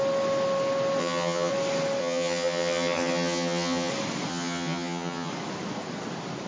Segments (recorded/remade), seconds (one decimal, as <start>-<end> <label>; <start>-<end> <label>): 0.0-1.0 recorded; 1.0-1.5 remade; 1.5-2.0 recorded; 2.0-3.9 remade; 3.9-4.3 recorded; 4.3-5.3 remade; 5.3-6.5 recorded

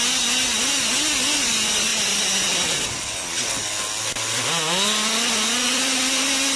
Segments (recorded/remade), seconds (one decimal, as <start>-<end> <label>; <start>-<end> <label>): 0.0-6.6 recorded

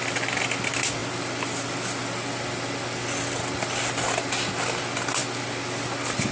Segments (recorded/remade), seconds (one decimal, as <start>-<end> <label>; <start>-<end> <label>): 0.0-1.0 recorded; 1.0-4.8 remade; 4.8-6.3 recorded

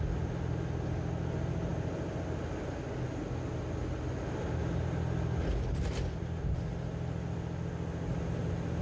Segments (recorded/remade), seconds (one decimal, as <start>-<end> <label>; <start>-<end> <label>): 0.0-8.8 recorded

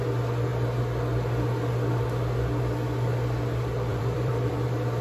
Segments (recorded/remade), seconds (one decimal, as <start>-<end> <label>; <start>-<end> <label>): 0.0-3.9 recorded; 3.9-4.5 remade; 4.5-5.0 recorded

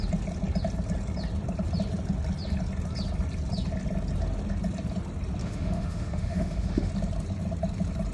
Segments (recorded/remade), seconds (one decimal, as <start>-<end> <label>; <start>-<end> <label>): 0.0-5.4 recorded; 5.4-6.9 remade; 6.9-8.1 recorded